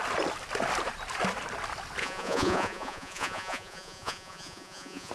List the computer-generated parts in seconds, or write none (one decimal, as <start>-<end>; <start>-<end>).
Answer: 2.0-5.1